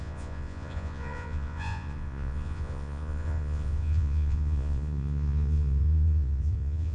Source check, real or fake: fake